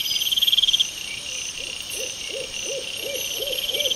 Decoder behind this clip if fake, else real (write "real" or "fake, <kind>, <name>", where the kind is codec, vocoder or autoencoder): fake, vocoder, BigVGAN v2